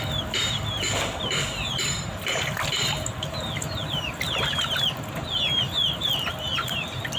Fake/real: real